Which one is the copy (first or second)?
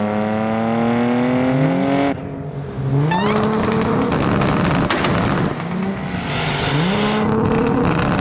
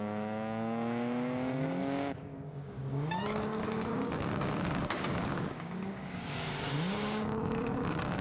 second